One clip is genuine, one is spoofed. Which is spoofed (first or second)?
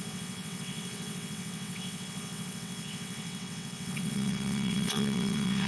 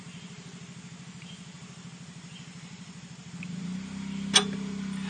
first